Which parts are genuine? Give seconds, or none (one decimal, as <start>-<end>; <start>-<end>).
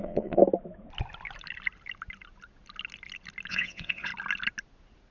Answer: 0.4-3.5; 4.1-5.1